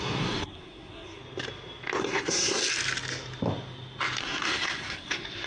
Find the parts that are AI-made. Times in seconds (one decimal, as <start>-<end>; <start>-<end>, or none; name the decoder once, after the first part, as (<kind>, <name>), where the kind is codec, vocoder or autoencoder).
0.0-1.2 (codec, SNAC); 2.0-2.6; 4.2-5.5